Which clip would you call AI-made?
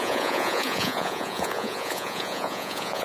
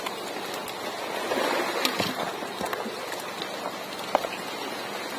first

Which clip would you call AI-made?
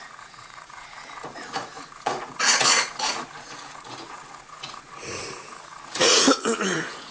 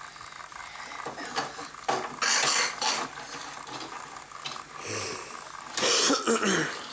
first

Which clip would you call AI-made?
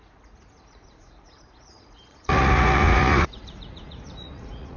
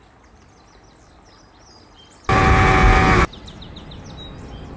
first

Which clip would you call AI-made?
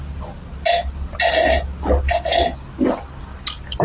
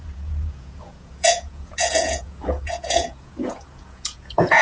second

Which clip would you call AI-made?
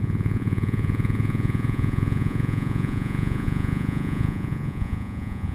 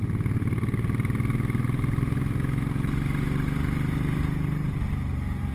first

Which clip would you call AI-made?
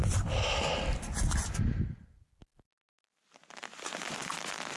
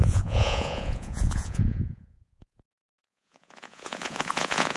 second